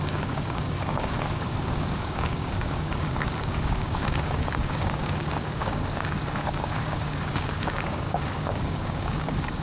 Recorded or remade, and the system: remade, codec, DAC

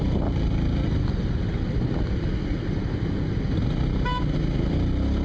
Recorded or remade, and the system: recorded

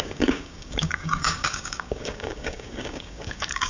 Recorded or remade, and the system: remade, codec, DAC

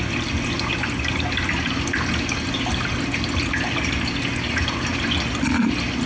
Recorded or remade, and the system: recorded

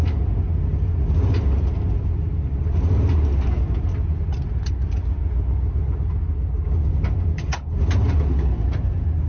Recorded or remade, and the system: recorded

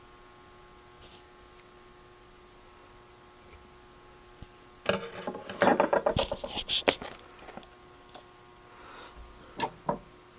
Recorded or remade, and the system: recorded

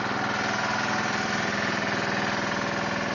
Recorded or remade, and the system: recorded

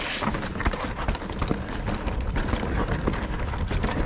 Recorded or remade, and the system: recorded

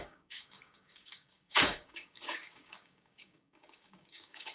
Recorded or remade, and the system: remade, codec, DAC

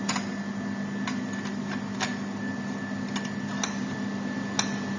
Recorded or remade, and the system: recorded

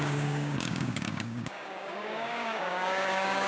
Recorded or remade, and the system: remade, codec, DAC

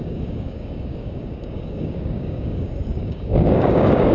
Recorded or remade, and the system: remade, codec, DAC